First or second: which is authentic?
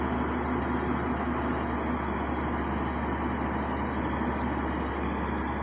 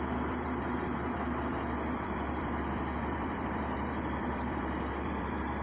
first